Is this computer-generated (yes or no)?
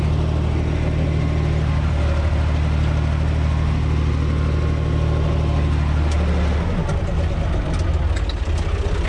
no